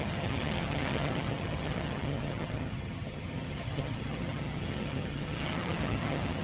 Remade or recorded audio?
remade